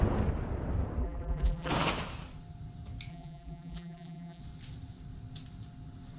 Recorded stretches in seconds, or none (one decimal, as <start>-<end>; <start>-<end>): 0.0-1.0; 1.7-3.1; 4.4-6.2